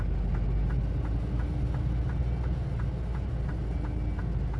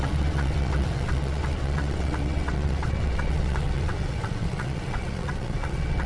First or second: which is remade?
second